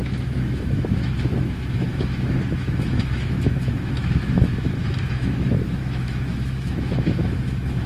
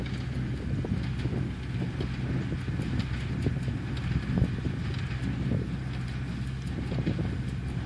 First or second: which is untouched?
second